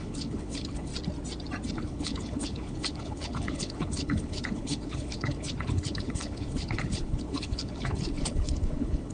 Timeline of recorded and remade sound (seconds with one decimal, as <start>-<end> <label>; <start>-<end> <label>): 0.0-0.9 remade; 0.9-1.7 recorded; 1.7-9.1 remade